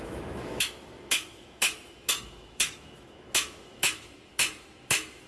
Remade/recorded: remade